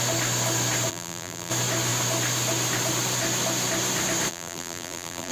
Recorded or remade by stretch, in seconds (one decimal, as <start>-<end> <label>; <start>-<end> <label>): 0.0-0.9 recorded; 0.9-1.5 remade; 1.5-4.3 recorded; 4.3-5.3 remade